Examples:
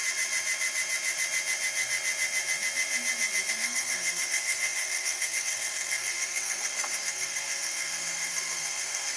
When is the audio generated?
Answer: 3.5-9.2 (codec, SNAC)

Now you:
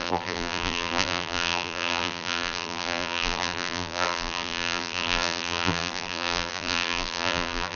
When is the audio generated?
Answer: 0.0-7.8 (vocoder, BigVGAN v2)

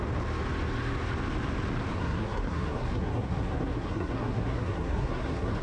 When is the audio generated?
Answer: 1.9-5.6 (codec, SNAC)

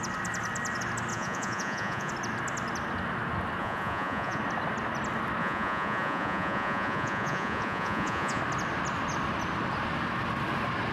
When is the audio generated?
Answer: 1.1-2.1 (vocoder, Vocos); 3.6-4.4; 5.4-8.4

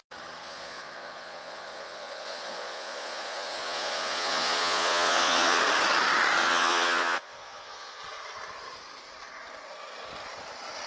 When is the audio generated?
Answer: 0.4-5.6 (vocoder, Vocos); 6.4-8.0

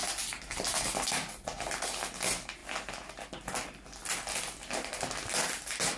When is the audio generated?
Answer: none

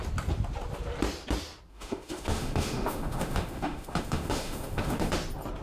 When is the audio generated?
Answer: 1.7-5.1 (autoencoder, DAC-VAE)